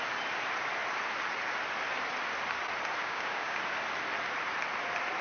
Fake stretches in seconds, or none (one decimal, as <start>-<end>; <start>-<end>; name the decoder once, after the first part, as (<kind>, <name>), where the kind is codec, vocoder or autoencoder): 3.0-3.6 (codec, DAC)